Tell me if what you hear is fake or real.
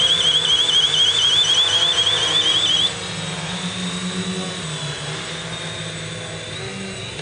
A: real